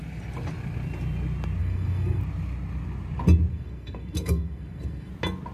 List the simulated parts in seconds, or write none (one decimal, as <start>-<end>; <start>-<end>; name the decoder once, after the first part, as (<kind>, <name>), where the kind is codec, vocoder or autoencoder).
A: 1.6-2.2 (codec, SNAC); 3.5-5.1